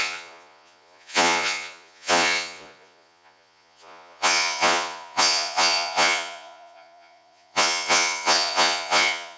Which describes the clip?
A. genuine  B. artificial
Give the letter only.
B